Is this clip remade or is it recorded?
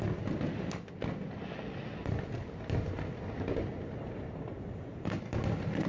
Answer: recorded